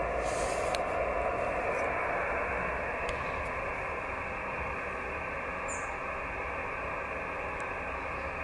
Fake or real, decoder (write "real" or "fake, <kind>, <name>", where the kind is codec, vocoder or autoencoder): real